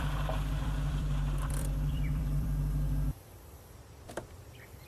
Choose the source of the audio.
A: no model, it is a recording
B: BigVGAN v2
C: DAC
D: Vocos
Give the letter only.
B